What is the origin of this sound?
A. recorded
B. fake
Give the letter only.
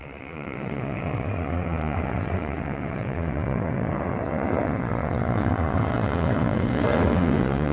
B